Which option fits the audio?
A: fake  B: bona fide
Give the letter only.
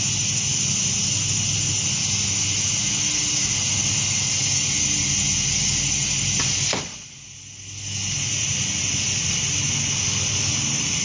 B